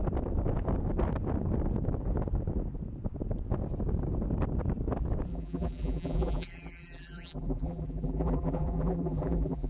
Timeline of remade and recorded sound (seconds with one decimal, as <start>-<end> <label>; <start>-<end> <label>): 0.0-5.3 recorded; 5.3-9.7 remade